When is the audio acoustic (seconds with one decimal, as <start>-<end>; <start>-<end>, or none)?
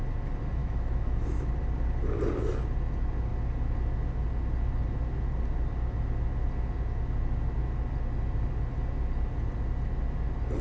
0.0-0.6; 1.5-10.6